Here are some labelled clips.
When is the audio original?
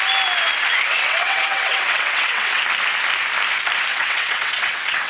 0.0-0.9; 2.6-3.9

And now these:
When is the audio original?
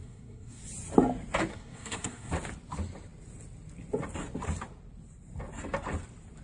0.6-1.5; 2.3-6.4